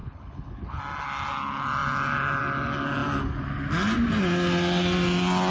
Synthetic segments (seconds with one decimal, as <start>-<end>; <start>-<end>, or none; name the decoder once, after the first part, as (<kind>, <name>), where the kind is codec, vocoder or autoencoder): 0.0-0.8 (codec, HILCodec)